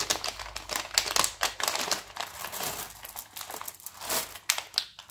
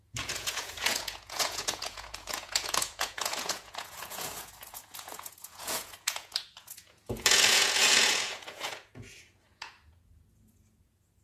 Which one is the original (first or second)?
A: first